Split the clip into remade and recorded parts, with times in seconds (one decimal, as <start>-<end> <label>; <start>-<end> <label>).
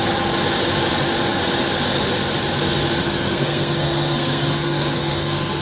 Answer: 0.0-3.0 recorded; 3.0-5.6 remade